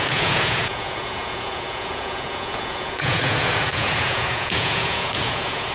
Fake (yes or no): yes